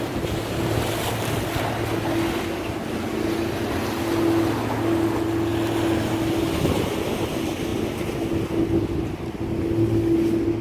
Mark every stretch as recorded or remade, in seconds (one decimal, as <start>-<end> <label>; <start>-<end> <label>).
0.0-10.6 recorded